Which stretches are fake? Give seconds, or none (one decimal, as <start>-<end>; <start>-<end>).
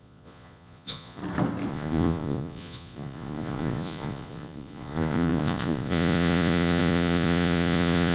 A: 0.0-1.2; 1.7-8.1